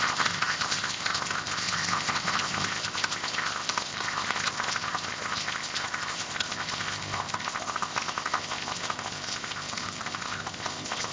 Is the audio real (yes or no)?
no